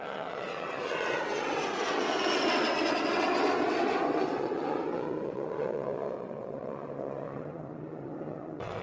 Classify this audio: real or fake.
fake